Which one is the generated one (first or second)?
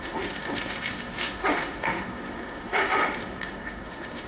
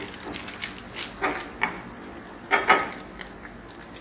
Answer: first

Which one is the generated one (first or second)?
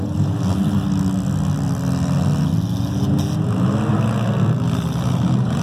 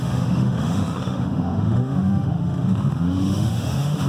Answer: second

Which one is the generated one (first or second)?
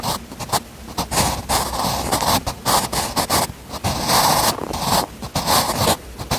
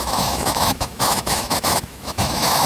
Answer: second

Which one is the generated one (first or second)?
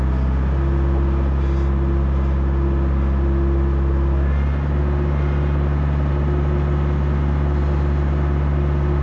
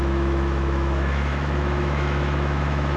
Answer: second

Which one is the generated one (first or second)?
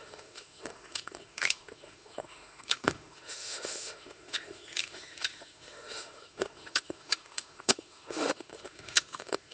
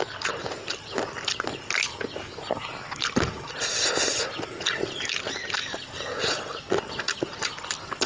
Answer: first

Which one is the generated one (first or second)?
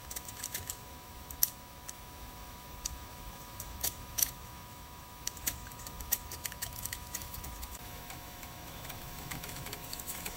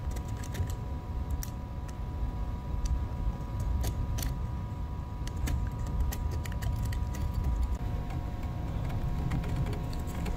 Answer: first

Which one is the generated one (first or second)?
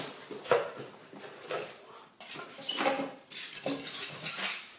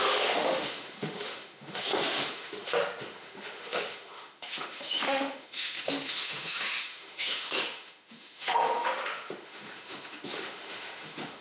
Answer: second